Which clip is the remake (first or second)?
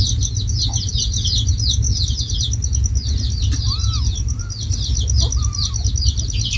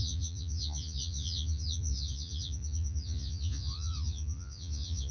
second